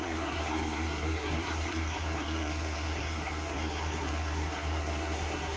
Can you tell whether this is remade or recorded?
remade